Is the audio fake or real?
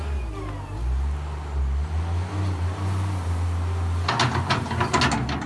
real